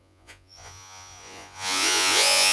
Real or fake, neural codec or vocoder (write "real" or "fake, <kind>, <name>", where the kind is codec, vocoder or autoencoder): fake, vocoder, Vocos